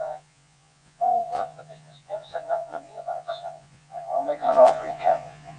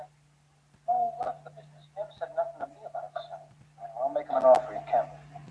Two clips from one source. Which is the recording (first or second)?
second